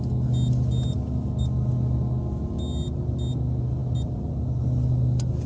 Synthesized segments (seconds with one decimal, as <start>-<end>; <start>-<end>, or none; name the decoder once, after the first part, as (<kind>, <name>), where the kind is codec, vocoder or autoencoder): none